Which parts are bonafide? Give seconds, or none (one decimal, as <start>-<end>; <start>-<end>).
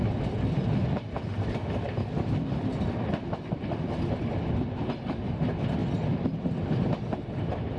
0.0-7.8